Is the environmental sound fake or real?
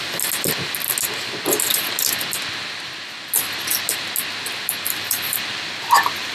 real